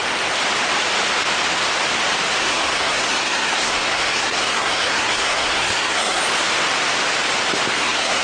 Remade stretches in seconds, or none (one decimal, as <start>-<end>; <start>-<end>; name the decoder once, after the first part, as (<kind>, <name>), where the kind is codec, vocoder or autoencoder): 2.4-6.2 (codec, SNAC); 7.7-8.2